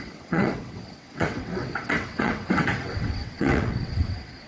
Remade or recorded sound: remade